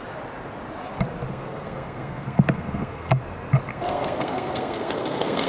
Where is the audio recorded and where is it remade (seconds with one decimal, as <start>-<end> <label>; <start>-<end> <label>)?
0.0-1.3 recorded; 1.3-3.2 remade; 3.2-3.7 recorded; 3.7-5.5 remade